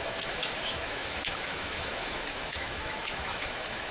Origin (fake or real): fake